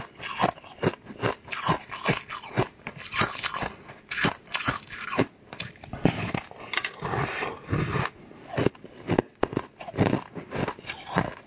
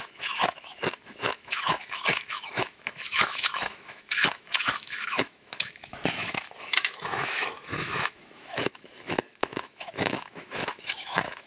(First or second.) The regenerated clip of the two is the second